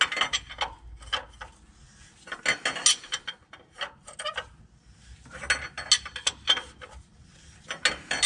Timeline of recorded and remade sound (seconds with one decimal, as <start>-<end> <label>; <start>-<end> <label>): 0.0-8.3 recorded